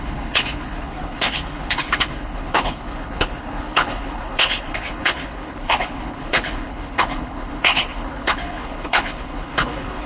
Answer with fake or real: fake